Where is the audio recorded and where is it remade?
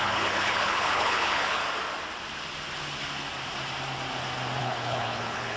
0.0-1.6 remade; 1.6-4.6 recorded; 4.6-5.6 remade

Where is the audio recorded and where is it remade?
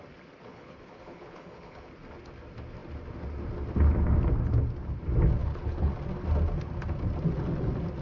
0.0-0.5 recorded; 0.5-1.9 remade; 1.9-5.4 recorded; 5.4-5.9 remade; 5.9-8.0 recorded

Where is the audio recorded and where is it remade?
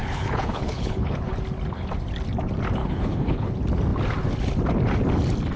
0.0-1.4 remade; 1.4-2.8 recorded; 2.8-3.5 remade; 3.5-5.6 recorded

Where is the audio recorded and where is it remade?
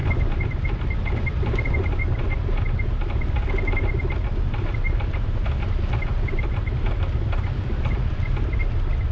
0.0-9.1 recorded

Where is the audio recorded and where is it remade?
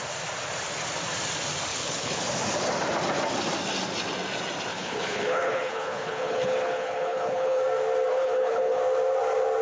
0.0-1.7 recorded; 1.7-2.2 remade; 2.2-4.7 recorded; 4.7-7.6 remade; 7.6-8.1 recorded; 8.1-8.8 remade; 8.8-9.6 recorded